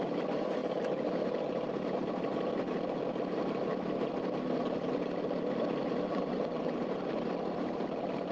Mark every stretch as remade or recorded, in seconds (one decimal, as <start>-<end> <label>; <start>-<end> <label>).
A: 0.0-6.1 recorded; 6.1-6.8 remade; 6.8-8.3 recorded